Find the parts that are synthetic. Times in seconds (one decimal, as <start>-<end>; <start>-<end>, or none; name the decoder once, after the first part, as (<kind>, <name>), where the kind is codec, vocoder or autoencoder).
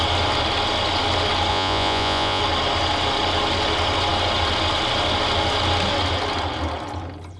1.5-2.4 (vocoder, Vocos)